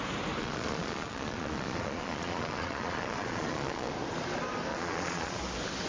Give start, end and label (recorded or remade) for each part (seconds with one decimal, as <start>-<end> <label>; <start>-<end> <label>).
0.0-0.4 recorded; 0.4-3.9 remade; 3.9-4.7 recorded; 4.7-5.4 remade; 5.4-5.9 recorded